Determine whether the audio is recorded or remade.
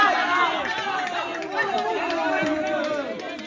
recorded